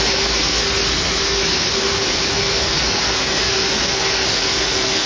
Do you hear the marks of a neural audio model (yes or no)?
yes